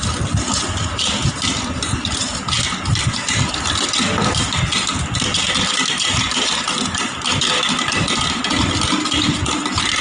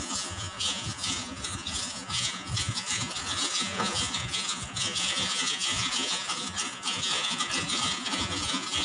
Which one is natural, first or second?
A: first